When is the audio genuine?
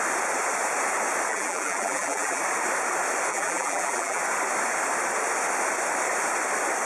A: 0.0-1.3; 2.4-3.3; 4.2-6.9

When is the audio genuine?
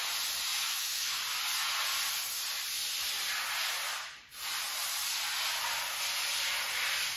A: 0.0-0.5; 1.2-7.2